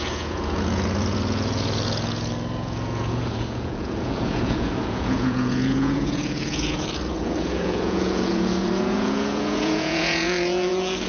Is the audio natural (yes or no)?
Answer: no